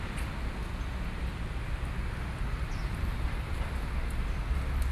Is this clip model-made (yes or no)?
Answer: no